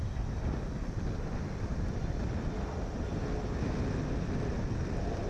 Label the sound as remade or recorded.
recorded